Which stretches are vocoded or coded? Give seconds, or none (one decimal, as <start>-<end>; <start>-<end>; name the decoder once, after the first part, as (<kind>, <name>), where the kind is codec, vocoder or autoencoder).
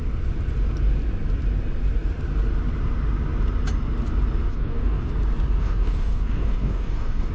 4.5-5.1 (codec, DAC); 5.6-7.3